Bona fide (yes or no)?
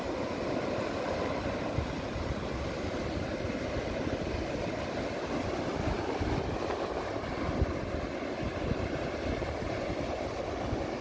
yes